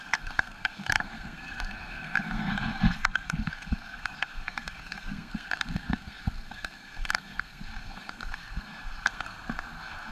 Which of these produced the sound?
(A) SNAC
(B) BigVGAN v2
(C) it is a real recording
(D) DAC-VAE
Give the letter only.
A